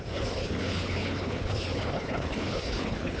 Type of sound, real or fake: fake